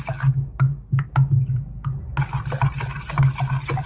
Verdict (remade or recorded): recorded